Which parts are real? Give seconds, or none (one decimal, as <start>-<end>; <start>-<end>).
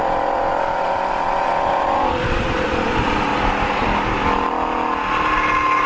3.3-5.9